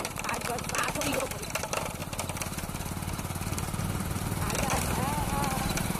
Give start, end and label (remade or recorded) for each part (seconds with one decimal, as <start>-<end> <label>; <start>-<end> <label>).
0.0-2.0 remade; 2.0-5.6 recorded; 5.6-6.0 remade